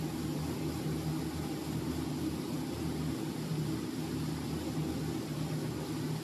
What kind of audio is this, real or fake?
real